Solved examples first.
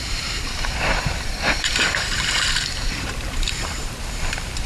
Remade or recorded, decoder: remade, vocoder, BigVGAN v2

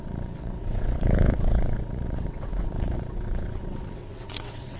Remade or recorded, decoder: remade, vocoder, WaveNeXt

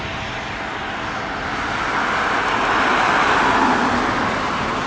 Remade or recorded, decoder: recorded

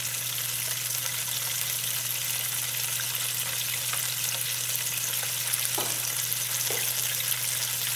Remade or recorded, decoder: recorded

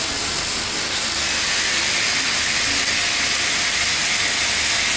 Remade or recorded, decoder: recorded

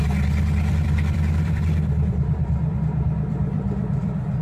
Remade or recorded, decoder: remade, vocoder, BigVGAN v2